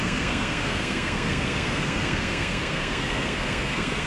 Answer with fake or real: fake